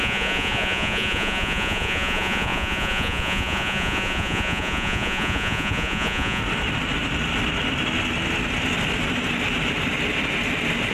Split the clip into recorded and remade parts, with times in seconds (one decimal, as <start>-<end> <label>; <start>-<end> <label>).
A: 0.0-6.4 remade; 6.4-10.9 recorded